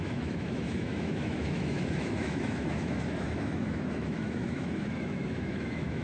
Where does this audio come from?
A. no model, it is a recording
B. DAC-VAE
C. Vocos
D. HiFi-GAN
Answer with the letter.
B